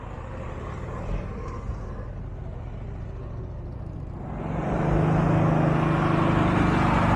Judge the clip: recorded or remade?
recorded